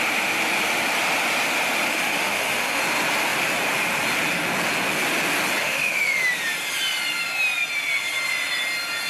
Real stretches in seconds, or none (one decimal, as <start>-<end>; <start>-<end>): 0.0-1.9; 2.8-5.6; 6.2-9.1